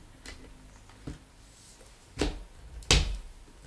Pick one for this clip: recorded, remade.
recorded